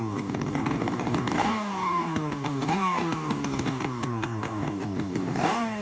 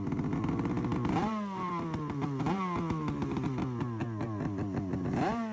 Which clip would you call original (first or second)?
second